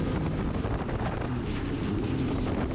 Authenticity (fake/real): fake